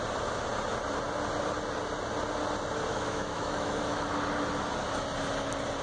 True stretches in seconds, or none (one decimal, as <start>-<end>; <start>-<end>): 0.0-2.9; 4.1-5.8